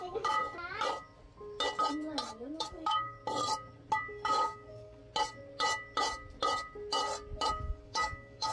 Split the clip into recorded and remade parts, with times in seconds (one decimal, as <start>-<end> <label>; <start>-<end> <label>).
0.0-0.4 remade; 0.4-2.6 recorded; 2.6-3.2 remade; 3.2-4.1 recorded; 4.1-5.0 remade; 5.0-7.5 recorded; 7.5-8.5 remade